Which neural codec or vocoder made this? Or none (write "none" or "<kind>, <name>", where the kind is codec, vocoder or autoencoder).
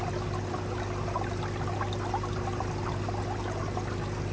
none